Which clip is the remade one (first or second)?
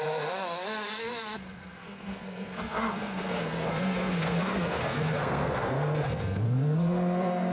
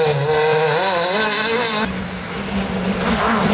first